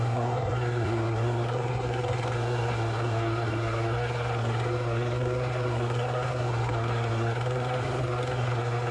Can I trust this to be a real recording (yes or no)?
no